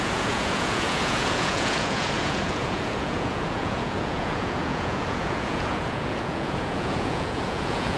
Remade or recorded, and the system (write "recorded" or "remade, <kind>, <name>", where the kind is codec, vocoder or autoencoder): remade, vocoder, Vocos